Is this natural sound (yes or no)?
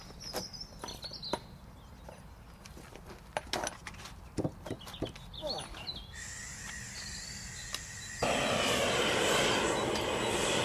yes